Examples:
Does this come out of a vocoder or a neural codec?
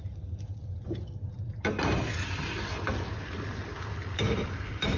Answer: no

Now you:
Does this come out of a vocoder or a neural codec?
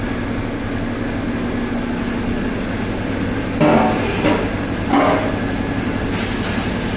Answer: no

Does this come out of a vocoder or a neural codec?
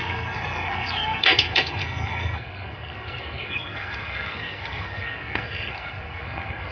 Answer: yes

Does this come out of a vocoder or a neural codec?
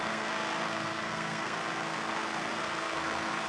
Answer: yes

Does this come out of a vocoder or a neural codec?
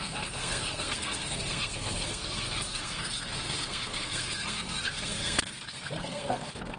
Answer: yes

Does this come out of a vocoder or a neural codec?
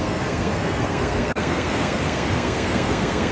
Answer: yes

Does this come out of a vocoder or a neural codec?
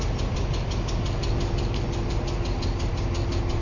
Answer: no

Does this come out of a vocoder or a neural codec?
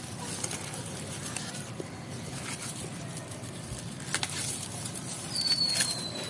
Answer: no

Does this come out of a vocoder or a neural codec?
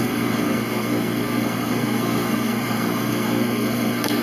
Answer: yes